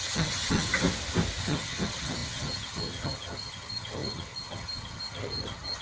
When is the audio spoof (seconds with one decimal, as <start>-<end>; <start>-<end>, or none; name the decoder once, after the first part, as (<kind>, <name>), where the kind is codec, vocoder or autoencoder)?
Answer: 0.0-0.7 (vocoder, HiFi-GAN); 1.4-5.8